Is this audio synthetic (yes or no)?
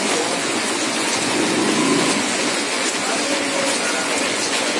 yes